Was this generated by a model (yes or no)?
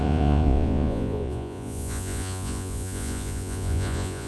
yes